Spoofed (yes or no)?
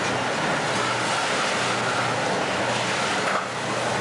no